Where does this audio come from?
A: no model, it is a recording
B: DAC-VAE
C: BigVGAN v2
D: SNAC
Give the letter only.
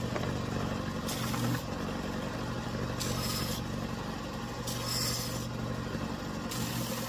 A